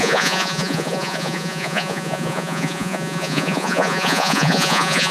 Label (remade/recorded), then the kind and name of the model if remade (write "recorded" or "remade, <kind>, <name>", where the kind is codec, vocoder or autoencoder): remade, vocoder, Vocos